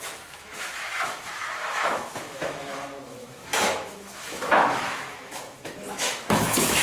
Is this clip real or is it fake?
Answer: fake